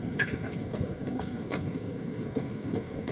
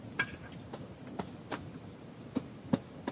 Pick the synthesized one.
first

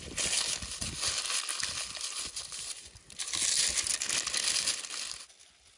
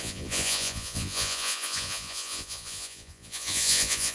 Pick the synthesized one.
second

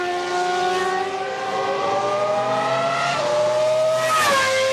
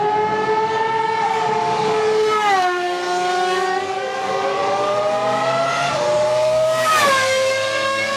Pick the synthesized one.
second